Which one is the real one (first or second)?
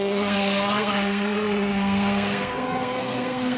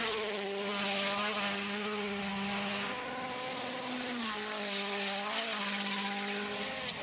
second